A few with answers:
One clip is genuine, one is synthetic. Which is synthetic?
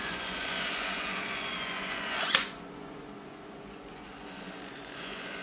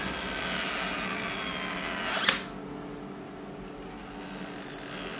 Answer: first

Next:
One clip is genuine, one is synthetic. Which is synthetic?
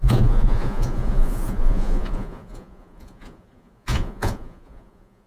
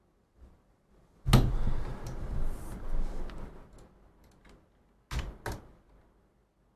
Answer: first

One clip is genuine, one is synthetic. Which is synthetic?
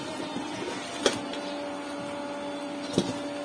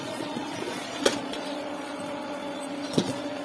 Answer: second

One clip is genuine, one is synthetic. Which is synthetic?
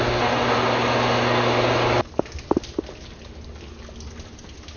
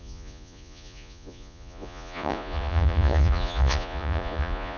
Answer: second